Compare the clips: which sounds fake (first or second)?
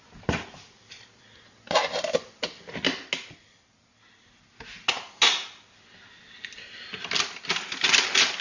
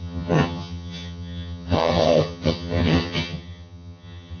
second